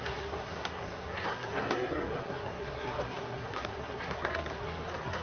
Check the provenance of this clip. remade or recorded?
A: remade